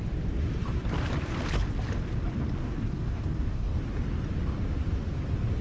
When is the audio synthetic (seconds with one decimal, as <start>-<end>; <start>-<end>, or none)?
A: 2.6-3.8